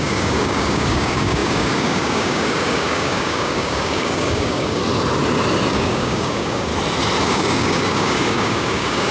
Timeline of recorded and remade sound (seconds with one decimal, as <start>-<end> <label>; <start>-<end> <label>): 0.0-4.8 remade; 4.8-5.7 recorded; 5.7-6.7 remade; 6.7-7.3 recorded; 7.3-9.1 remade